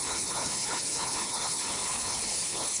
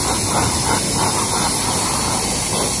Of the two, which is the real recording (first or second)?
second